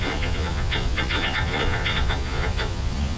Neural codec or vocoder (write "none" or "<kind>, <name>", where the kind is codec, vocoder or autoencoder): vocoder, Vocos